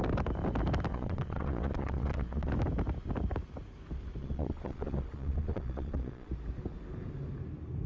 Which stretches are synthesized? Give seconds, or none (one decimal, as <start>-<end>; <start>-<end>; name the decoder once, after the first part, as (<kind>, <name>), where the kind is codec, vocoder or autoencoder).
0.9-2.5 (vocoder, Vocos); 4.2-6.3